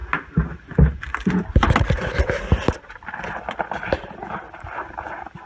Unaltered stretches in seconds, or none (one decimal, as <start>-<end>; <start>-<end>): 0.0-5.5

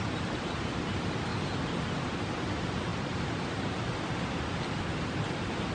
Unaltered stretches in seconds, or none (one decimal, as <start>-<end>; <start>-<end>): 0.0-5.7

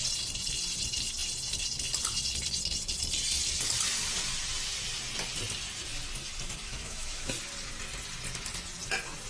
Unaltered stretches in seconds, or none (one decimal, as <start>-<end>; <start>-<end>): 0.0-6.7; 7.3-9.3

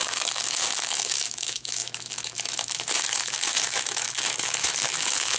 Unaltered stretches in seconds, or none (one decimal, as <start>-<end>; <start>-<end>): none

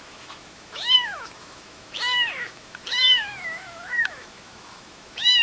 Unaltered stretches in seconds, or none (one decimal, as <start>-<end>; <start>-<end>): none

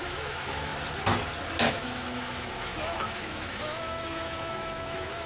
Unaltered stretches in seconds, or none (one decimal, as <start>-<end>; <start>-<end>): 0.7-1.7

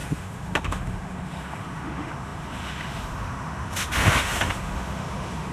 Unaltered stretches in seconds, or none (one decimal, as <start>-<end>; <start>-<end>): none

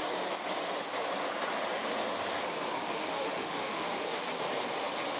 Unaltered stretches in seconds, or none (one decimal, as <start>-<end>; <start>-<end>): 0.0-2.8; 4.2-5.2